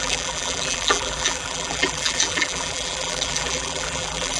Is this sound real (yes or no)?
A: no